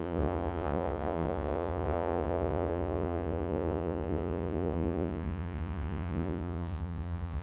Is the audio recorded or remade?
remade